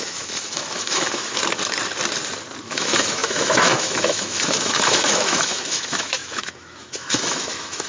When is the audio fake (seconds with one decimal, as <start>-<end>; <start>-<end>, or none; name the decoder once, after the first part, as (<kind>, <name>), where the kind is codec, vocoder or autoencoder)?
0.0-1.4 (autoencoder, DAC-VAE); 2.6-7.9